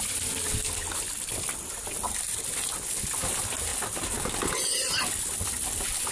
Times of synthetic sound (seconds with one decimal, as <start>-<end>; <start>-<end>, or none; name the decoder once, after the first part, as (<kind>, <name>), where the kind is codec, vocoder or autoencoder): none

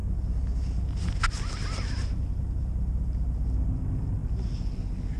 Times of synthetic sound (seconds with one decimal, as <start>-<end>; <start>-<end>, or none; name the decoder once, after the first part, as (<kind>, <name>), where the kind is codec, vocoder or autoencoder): none